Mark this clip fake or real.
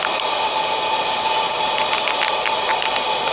real